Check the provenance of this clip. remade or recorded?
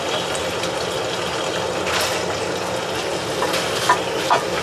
recorded